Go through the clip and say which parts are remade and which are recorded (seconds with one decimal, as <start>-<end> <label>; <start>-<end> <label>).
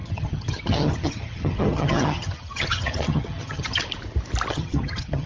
0.0-3.8 remade; 3.8-4.5 recorded; 4.5-5.3 remade